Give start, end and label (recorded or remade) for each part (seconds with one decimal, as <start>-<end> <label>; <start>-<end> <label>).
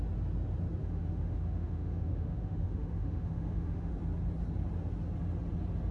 0.0-0.8 recorded; 0.8-3.9 remade; 3.9-5.9 recorded